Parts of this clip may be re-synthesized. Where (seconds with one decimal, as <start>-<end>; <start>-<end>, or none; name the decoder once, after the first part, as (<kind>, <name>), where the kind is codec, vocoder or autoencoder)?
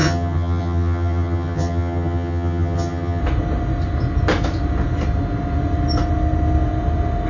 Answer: 0.0-3.2 (vocoder, HiFi-GAN)